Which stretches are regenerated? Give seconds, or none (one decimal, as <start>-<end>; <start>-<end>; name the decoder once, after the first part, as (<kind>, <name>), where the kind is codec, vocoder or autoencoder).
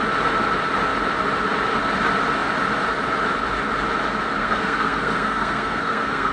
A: 4.4-6.3 (codec, SNAC)